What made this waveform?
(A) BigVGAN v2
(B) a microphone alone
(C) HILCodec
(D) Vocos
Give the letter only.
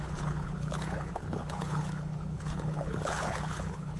C